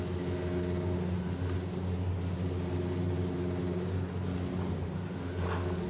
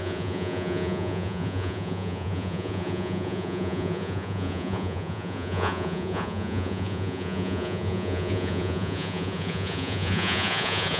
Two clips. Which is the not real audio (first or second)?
second